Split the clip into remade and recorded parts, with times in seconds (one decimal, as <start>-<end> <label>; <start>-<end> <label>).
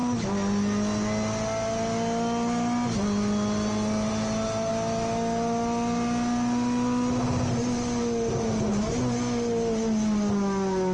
0.0-10.9 recorded